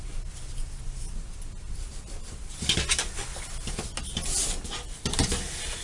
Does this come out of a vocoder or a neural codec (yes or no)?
no